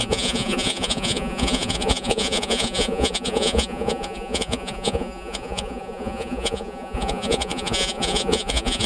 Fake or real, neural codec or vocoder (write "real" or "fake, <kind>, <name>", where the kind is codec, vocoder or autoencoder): fake, vocoder, Vocos